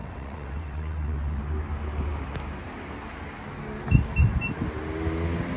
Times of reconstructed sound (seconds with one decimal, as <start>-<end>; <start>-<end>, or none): 0.0-1.4